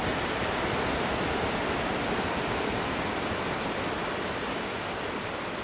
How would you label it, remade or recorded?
remade